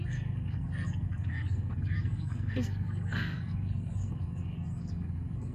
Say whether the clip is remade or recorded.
remade